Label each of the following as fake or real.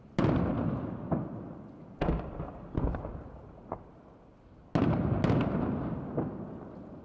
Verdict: real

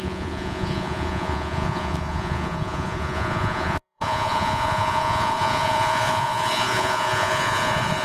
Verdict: fake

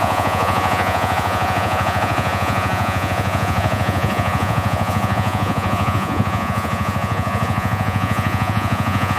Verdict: fake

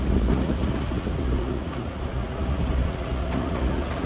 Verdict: fake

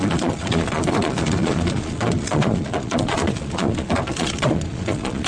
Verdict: fake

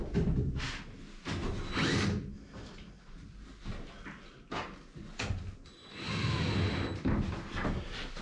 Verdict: real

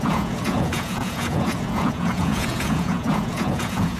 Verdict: fake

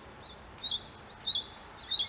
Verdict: real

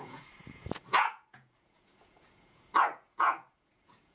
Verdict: fake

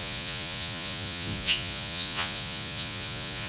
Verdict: fake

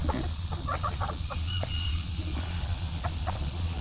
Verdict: fake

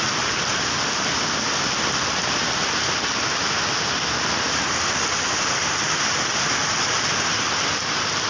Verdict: real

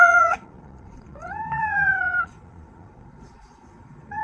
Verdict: fake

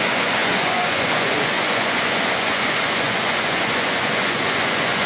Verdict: fake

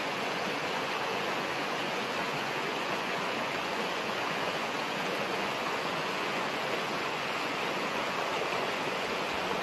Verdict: fake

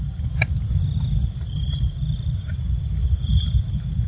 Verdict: real